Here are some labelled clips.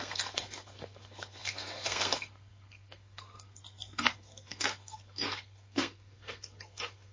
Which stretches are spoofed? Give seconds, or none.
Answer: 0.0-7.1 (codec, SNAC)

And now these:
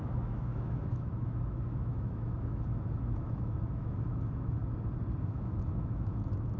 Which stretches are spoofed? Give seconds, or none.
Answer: 0.0-4.6 (autoencoder, DAC-VAE); 5.2-6.6

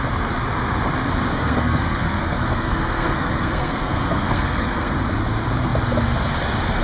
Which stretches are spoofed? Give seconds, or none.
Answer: 1.3-4.9 (codec, SNAC)

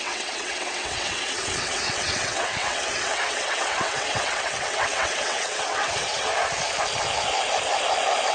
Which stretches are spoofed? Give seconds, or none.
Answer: 0.0-6.3 (vocoder, WaveNeXt)

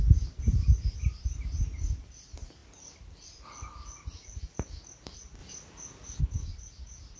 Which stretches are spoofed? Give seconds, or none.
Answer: none

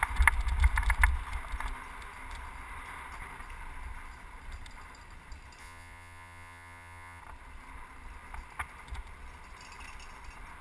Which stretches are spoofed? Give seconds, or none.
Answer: 5.6-7.2 (vocoder, Vocos)